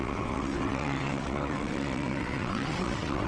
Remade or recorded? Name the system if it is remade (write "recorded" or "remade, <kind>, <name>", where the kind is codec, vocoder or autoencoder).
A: remade, vocoder, WaveNeXt